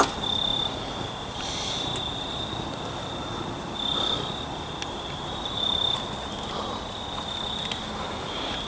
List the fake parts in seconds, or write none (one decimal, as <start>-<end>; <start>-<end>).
none